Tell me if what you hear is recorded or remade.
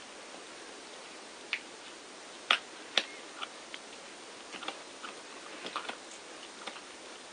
recorded